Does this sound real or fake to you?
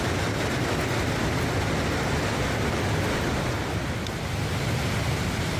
real